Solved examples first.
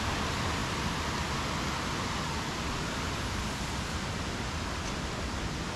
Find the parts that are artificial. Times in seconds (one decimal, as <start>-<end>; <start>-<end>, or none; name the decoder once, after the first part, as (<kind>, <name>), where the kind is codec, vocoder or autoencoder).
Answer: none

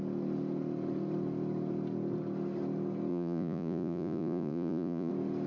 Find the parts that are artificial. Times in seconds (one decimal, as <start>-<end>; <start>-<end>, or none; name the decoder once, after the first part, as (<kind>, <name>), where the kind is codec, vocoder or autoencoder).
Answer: 3.1-5.1 (vocoder, Vocos)

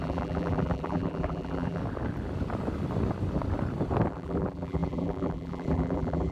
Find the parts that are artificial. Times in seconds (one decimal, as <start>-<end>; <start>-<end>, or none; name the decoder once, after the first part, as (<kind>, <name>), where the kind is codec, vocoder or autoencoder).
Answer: 0.0-1.8 (vocoder, BigVGAN v2); 4.1-6.3